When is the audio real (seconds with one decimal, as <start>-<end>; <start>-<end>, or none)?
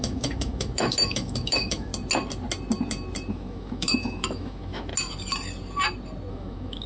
1.9-3.3; 4.9-6.3